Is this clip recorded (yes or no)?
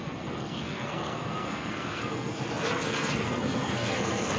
no